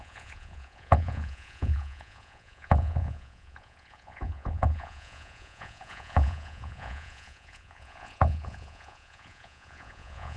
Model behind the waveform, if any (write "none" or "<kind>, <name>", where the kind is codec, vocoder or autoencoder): vocoder, Vocos